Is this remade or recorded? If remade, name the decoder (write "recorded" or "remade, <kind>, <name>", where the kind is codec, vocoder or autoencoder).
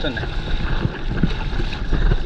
recorded